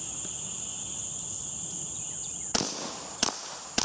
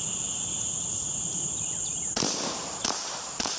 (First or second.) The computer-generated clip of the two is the second